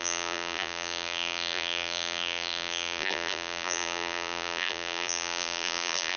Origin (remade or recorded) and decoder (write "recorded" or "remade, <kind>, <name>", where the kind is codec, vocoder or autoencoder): remade, vocoder, BigVGAN v2